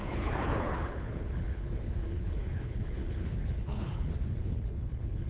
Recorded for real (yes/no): no